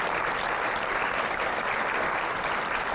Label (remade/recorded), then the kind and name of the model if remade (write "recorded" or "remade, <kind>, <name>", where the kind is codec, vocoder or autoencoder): remade, vocoder, BigVGAN v2